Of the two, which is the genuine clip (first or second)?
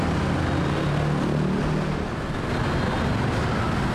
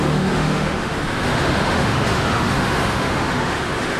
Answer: first